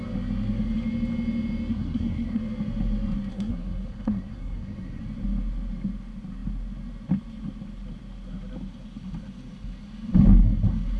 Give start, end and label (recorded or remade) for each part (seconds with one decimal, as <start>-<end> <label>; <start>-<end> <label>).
0.0-1.7 recorded; 1.7-2.4 remade; 2.4-3.3 recorded; 3.3-5.0 remade; 5.0-11.0 recorded